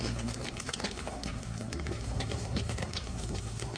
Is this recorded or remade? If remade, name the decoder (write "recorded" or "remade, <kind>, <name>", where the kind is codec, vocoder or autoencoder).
remade, codec, SNAC